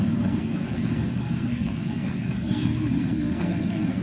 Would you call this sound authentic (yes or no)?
no